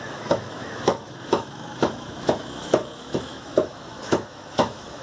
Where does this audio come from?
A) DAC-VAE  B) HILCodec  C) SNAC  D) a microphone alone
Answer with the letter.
A